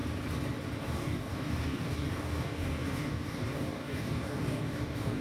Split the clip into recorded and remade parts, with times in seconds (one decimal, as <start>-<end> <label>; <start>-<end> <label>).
0.0-0.8 recorded; 0.8-5.2 remade